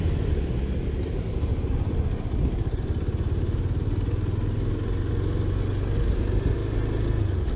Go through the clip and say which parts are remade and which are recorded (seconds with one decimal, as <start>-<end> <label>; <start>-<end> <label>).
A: 0.0-1.5 recorded; 1.5-2.8 remade; 2.8-7.6 recorded